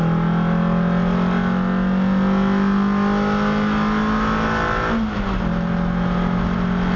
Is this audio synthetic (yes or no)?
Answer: no